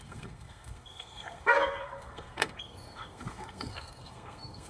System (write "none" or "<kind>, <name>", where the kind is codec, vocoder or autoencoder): codec, SNAC